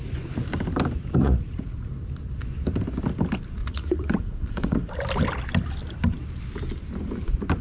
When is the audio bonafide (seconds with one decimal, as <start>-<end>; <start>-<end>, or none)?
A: 0.0-1.2; 1.9-3.6; 4.9-7.6